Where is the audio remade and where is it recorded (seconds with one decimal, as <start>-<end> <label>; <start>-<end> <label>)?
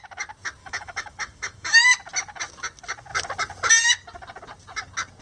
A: 0.0-0.6 recorded; 0.6-1.8 remade; 1.8-5.2 recorded